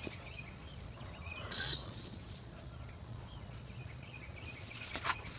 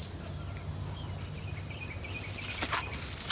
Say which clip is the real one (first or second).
second